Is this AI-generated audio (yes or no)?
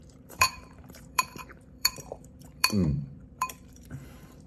yes